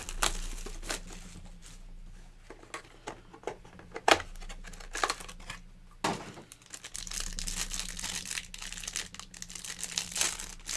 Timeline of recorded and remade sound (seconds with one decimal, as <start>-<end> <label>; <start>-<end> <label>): 0.0-10.8 recorded